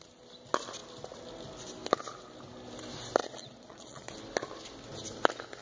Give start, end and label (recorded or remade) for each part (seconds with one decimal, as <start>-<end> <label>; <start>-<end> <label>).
0.0-3.2 recorded; 3.2-4.1 remade; 4.1-5.6 recorded